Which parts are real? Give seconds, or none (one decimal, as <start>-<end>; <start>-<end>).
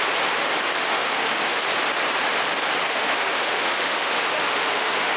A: 0.0-0.9; 1.6-2.9